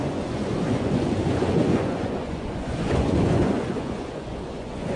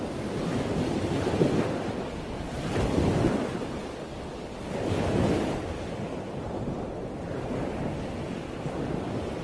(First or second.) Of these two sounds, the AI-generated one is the first